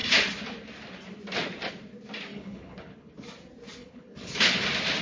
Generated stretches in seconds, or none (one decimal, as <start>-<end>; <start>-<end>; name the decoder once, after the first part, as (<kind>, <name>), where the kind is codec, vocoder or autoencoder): 2.3-3.1 (codec, HILCodec); 3.8-4.6